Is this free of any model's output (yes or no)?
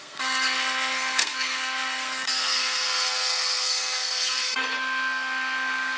no